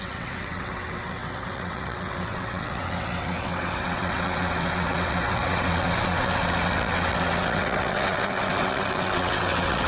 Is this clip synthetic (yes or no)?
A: yes